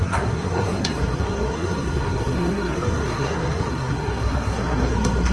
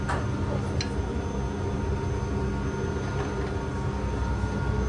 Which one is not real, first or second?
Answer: first